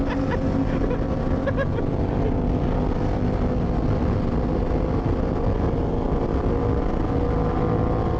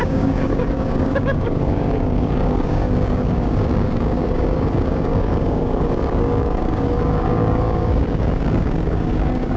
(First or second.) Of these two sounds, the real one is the first